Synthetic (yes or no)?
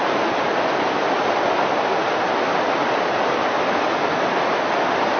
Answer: no